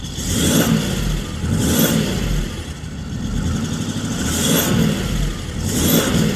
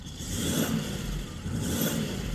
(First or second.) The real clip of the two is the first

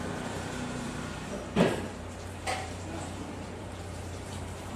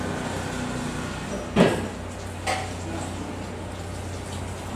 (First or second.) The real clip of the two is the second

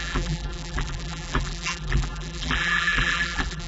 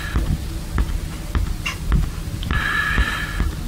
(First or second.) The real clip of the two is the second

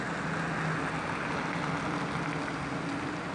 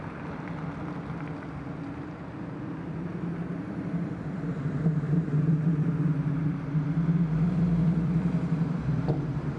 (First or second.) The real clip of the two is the first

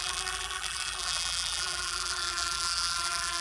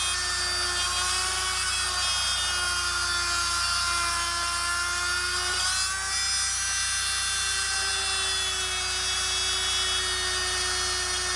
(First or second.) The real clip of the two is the second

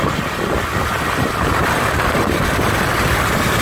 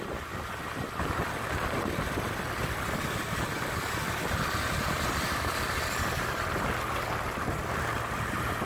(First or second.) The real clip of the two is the second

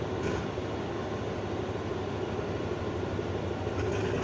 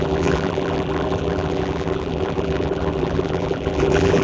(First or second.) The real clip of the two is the first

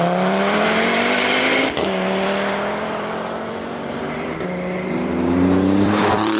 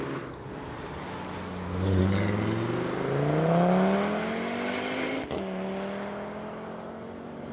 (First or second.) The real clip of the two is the second